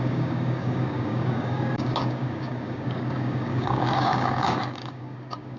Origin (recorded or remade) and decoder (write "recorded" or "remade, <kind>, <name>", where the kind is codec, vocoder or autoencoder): remade, codec, DAC